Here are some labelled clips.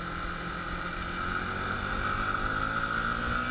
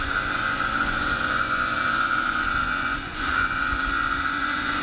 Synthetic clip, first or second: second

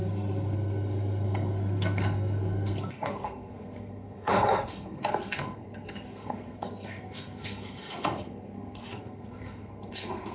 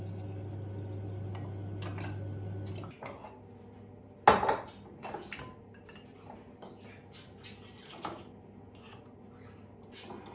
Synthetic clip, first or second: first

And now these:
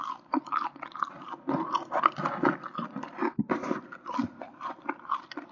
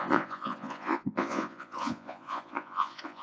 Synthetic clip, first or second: second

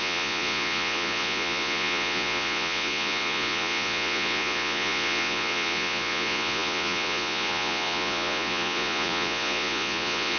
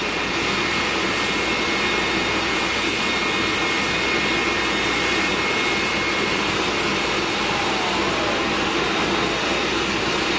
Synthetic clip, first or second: first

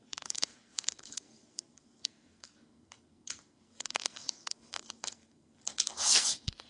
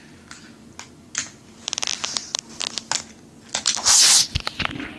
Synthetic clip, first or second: first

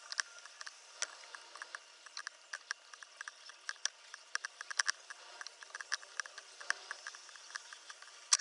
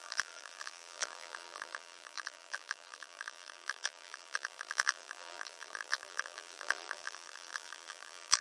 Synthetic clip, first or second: second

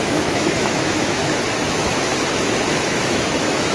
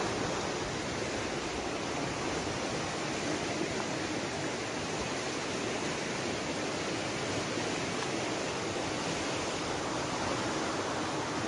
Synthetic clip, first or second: first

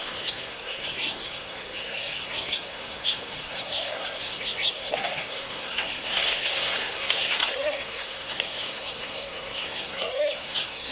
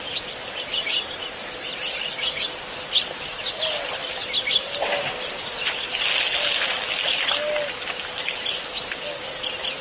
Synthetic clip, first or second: first